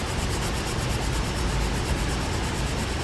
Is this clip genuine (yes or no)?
yes